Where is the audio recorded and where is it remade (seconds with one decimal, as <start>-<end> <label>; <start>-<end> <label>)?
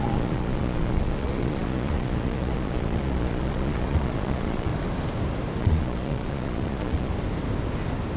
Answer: 0.0-4.7 remade; 4.7-5.6 recorded; 5.6-7.1 remade; 7.1-8.2 recorded